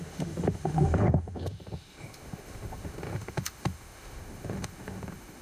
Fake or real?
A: fake